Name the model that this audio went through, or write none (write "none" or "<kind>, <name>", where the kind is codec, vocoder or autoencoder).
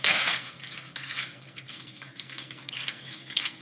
codec, SNAC